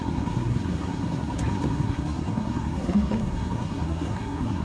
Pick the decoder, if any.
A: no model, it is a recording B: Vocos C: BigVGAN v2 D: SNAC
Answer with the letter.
D